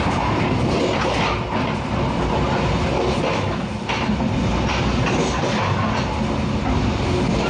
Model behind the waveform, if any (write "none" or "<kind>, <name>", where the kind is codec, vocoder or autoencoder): none